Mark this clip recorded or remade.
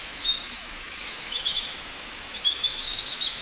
remade